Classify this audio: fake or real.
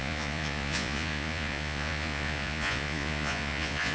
fake